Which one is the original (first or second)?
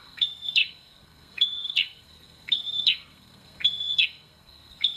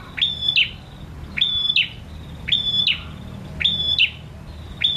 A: second